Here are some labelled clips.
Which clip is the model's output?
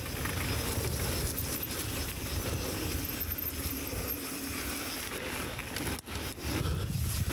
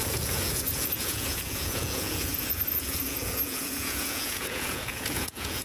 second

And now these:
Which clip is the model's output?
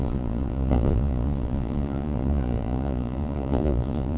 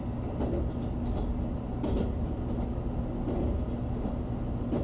first